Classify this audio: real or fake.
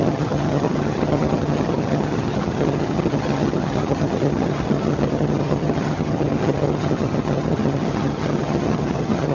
fake